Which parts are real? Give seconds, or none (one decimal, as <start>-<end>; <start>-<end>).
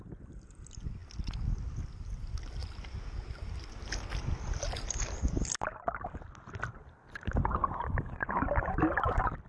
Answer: 0.0-9.5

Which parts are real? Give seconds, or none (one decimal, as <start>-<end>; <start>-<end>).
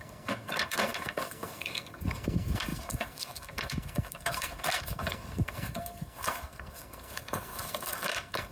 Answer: none